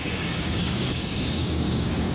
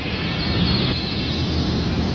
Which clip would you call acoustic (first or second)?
second